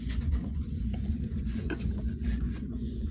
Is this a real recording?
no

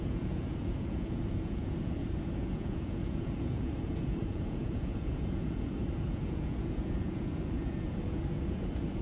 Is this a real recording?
no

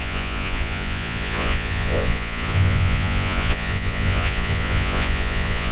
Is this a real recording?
no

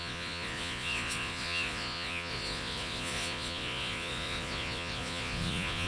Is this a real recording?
no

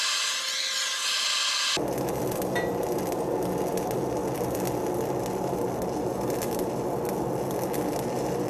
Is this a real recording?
yes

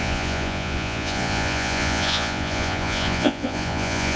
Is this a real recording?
no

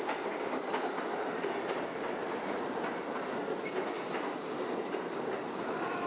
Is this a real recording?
yes